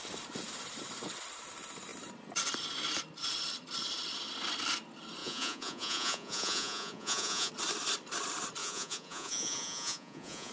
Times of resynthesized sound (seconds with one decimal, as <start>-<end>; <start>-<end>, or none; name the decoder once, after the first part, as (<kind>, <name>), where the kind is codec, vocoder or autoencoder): 5.2-7.5 (vocoder, Vocos); 8.6-10.5